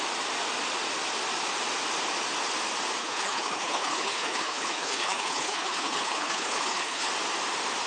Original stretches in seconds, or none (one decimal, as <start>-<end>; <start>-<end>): 0.0-3.0; 7.1-7.9